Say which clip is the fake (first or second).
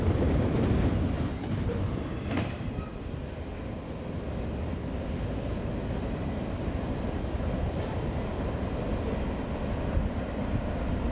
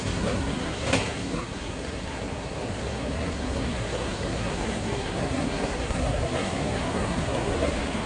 second